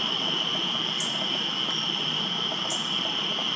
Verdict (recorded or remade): recorded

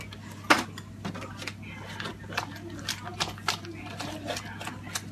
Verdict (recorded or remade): recorded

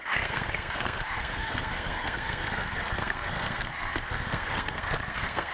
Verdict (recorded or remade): remade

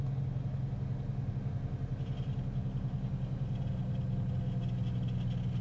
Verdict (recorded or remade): recorded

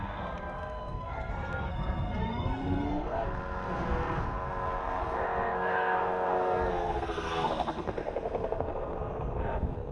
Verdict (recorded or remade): remade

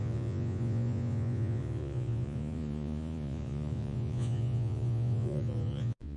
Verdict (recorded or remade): remade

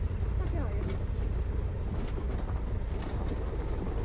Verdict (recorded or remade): recorded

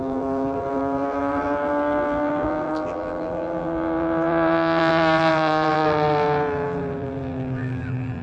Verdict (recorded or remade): remade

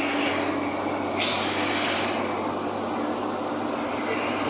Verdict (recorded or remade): recorded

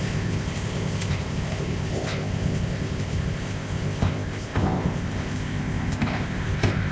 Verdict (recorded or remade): remade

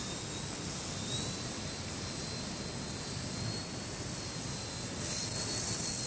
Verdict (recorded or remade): recorded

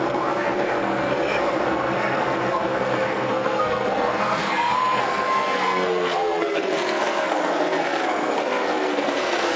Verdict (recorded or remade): remade